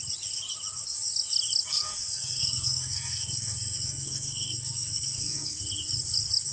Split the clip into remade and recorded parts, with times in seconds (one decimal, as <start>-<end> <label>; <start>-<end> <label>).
0.0-1.7 recorded; 1.7-5.6 remade; 5.6-6.5 recorded